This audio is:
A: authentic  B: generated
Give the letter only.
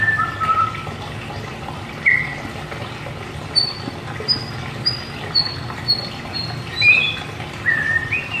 A